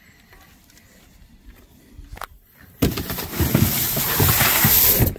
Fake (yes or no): no